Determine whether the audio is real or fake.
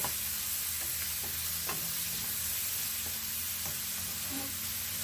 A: real